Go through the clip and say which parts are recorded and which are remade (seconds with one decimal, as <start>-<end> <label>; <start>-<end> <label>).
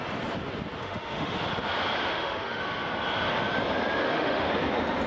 0.0-0.8 recorded; 0.8-1.4 remade; 1.4-2.1 recorded; 2.1-2.6 remade; 2.6-4.0 recorded; 4.0-4.5 remade; 4.5-5.1 recorded